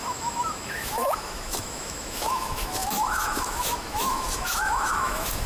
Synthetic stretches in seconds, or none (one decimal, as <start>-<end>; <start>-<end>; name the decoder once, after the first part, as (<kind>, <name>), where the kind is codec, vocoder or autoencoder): 0.0-5.5 (autoencoder, DAC-VAE)